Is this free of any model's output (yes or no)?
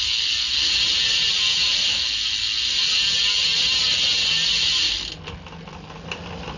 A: yes